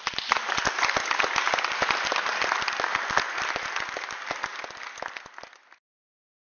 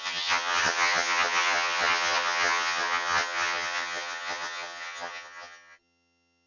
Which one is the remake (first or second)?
second